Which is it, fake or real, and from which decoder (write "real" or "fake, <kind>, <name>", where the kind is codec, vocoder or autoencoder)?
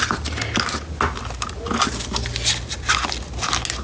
real